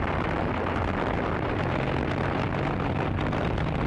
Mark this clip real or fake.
real